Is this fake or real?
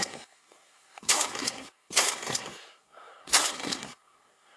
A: fake